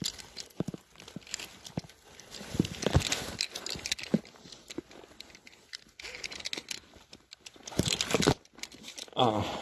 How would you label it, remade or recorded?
recorded